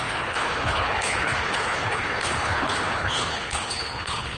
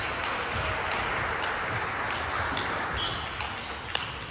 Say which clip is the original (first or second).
second